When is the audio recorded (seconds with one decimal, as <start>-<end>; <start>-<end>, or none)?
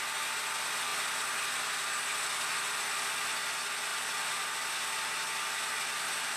0.0-6.4